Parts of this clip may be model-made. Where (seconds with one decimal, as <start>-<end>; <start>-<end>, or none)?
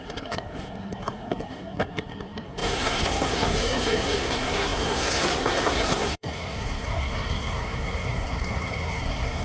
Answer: 0.0-9.4